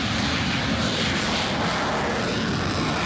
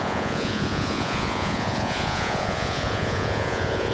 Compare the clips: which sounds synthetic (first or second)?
second